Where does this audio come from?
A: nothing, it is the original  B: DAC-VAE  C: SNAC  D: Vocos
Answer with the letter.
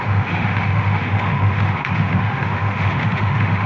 B